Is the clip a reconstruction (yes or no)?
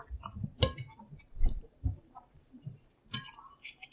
yes